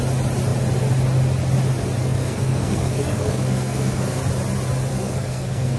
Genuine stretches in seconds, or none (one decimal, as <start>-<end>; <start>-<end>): 0.0-2.0; 4.2-4.9